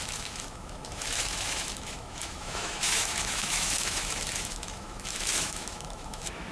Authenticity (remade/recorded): remade